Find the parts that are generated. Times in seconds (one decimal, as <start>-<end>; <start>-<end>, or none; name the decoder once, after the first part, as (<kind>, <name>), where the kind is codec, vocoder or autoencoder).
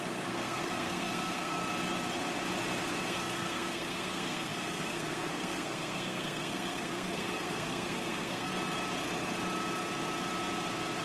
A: 0.0-1.6 (codec, SNAC); 3.0-8.5